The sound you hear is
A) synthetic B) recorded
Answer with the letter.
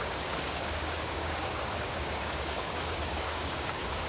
A